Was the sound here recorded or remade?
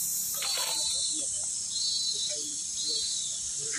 remade